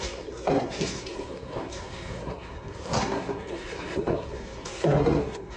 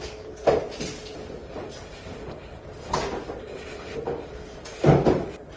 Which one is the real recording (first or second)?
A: second